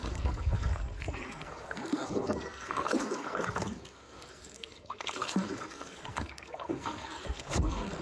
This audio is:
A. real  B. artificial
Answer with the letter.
B